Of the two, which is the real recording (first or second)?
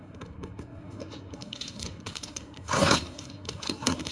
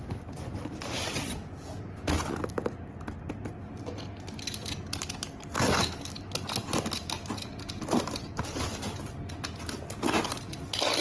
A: second